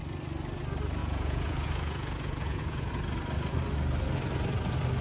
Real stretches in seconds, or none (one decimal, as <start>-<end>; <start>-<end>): 0.0-1.0; 2.9-5.0